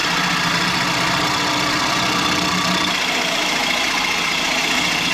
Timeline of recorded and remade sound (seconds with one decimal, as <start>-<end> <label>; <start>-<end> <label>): 0.0-5.1 recorded